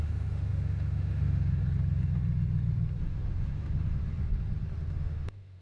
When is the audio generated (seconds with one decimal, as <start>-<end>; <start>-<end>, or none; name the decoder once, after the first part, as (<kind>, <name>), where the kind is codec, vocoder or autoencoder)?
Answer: 0.0-1.6 (autoencoder, DAC-VAE); 3.0-4.0; 4.9-5.6